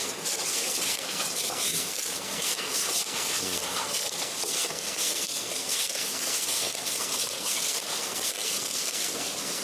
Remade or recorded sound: remade